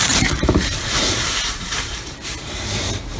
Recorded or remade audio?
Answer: remade